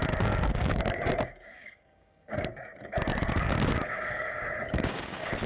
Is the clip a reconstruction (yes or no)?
yes